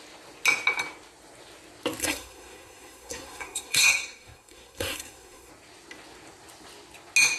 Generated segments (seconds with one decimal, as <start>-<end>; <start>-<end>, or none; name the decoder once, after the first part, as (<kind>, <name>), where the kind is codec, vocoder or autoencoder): 2.0-5.5 (codec, SNAC)